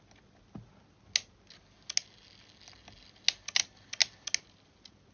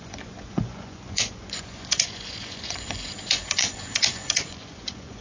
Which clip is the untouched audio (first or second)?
first